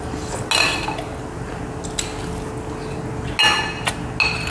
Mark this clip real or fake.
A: real